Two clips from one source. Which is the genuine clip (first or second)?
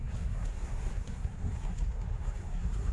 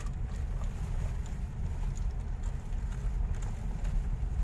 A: second